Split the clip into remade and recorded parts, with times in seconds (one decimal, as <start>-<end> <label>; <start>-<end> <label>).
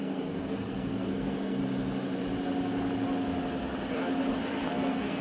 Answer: 0.0-1.6 remade; 1.6-4.7 recorded; 4.7-5.2 remade